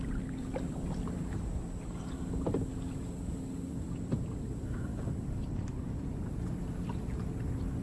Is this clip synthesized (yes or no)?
no